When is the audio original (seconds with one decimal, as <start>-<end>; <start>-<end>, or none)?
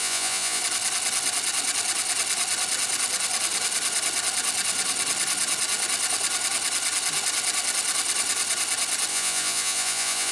0.6-9.1